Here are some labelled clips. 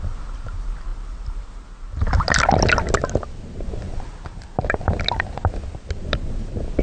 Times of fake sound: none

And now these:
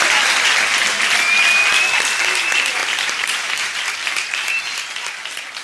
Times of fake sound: 2.8-3.9 (vocoder, BigVGAN v2)

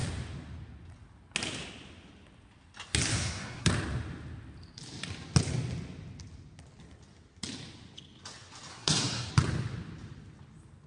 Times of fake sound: 3.1-3.7 (codec, SNAC); 8.7-9.3

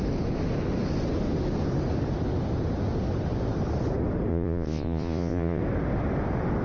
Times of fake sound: 4.3-5.6 (vocoder, Vocos)